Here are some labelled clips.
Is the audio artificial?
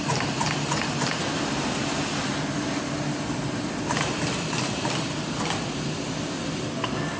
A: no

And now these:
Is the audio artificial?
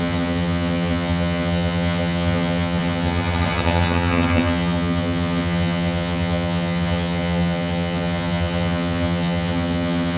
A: yes